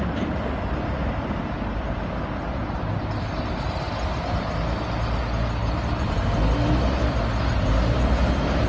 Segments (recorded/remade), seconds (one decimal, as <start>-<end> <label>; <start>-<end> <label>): 0.0-8.7 recorded